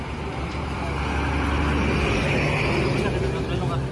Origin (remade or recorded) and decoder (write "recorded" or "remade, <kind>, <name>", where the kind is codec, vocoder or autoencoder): recorded